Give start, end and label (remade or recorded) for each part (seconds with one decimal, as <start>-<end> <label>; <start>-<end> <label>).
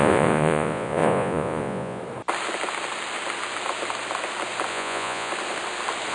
0.0-2.0 remade; 2.0-4.7 recorded; 4.7-5.3 remade; 5.3-6.1 recorded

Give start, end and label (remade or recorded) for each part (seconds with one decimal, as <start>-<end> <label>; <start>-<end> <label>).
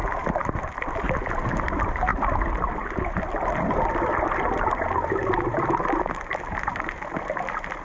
0.0-7.8 recorded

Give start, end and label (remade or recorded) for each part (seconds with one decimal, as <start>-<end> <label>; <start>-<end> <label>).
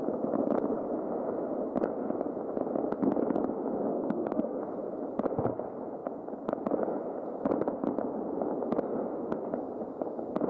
0.0-3.9 recorded; 3.9-4.6 remade; 4.6-10.5 recorded